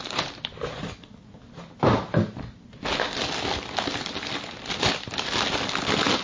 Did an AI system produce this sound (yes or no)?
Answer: no